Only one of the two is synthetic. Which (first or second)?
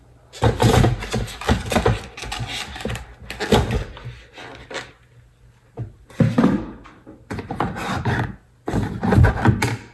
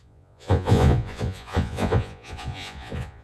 second